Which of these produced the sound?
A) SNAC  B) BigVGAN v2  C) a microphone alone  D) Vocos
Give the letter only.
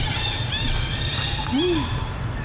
C